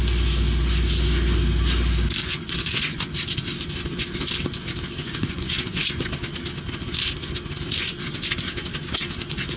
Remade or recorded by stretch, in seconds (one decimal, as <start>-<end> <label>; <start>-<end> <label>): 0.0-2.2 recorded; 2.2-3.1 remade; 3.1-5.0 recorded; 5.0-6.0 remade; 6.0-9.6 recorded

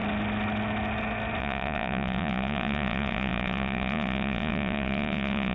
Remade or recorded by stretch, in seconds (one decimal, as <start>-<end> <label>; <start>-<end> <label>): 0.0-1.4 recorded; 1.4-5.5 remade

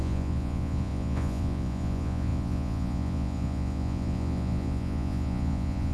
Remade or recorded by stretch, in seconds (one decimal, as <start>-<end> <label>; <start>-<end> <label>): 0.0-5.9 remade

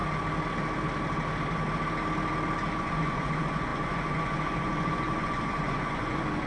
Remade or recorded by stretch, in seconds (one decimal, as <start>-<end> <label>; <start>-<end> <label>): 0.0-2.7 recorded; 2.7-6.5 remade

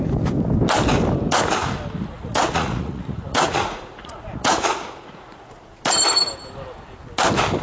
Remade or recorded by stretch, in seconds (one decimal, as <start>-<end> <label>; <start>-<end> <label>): 0.0-2.1 recorded; 2.1-5.8 remade; 5.8-7.6 recorded